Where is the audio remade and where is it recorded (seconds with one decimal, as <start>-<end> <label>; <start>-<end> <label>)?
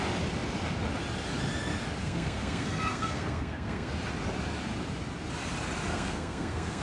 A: 0.0-2.0 recorded; 2.0-3.9 remade; 3.9-5.9 recorded; 5.9-6.8 remade